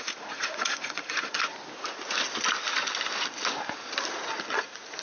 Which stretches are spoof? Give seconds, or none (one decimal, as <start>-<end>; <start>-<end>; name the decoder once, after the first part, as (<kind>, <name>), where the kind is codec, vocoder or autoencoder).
0.0-1.5 (vocoder, Vocos); 4.1-5.0